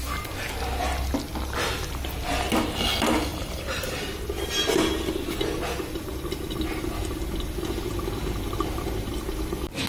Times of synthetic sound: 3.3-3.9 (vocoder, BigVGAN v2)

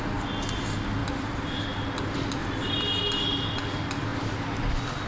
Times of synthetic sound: 1.0-1.6 (vocoder, BigVGAN v2); 2.4-3.0; 4.1-4.6

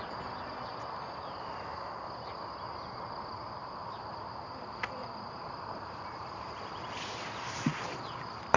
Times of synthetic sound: 3.6-6.4 (vocoder, BigVGAN v2)

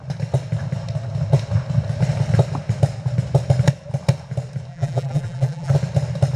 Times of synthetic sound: 4.7-5.7 (vocoder, BigVGAN v2)

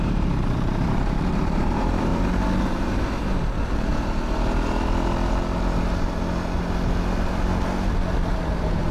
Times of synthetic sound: 0.0-2.1 (vocoder, BigVGAN v2); 2.7-3.9; 8.3-8.9